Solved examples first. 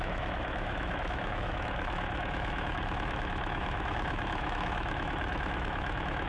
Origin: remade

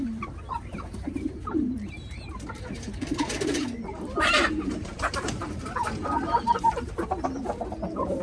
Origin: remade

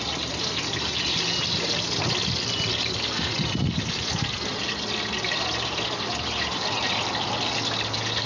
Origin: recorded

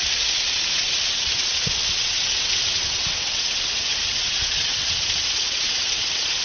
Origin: remade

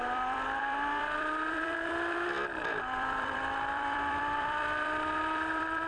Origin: remade